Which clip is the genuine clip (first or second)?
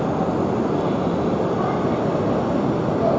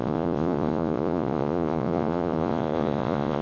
first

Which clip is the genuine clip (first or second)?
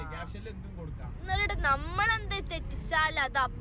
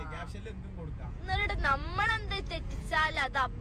first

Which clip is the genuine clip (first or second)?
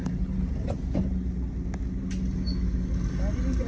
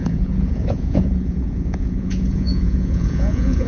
first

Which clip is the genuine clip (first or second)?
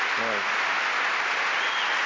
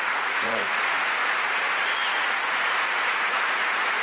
first